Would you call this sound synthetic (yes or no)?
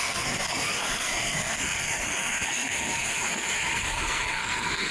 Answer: yes